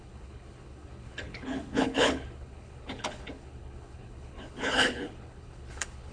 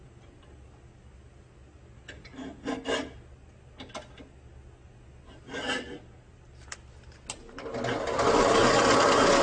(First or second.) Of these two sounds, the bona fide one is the second